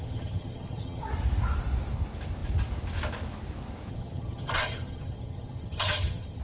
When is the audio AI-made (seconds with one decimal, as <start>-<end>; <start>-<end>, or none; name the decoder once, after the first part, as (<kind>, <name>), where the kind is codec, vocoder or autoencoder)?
0.0-1.1 (vocoder, HiFi-GAN); 3.9-6.4